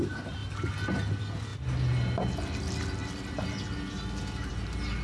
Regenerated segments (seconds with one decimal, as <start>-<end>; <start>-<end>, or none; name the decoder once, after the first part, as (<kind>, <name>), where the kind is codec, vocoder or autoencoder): none